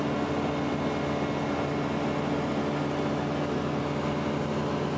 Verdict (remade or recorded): recorded